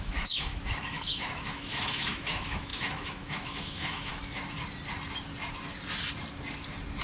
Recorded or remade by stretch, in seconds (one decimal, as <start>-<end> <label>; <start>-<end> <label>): 0.0-4.1 remade; 4.1-7.0 recorded